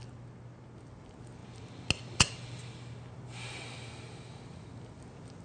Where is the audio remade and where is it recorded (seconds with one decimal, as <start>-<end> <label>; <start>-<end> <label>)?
0.0-5.4 recorded